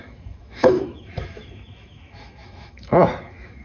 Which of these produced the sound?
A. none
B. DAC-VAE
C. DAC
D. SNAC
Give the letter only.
B